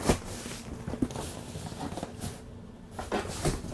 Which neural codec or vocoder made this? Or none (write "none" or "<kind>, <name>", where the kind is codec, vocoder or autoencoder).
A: none